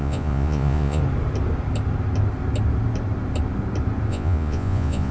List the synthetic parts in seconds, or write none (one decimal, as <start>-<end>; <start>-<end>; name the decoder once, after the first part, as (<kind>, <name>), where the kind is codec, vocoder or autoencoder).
0.0-1.0 (vocoder, Vocos); 4.1-5.1